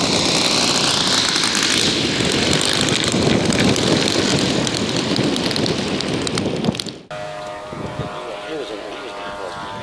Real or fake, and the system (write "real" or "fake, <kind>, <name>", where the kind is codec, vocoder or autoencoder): real